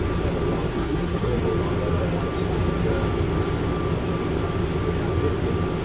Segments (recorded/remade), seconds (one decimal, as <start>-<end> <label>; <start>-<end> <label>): 0.0-0.7 recorded; 0.7-1.4 remade; 1.4-5.8 recorded